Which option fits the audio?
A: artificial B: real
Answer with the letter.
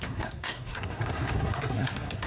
A